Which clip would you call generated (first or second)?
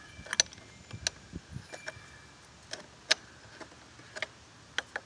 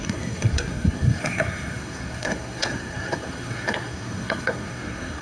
second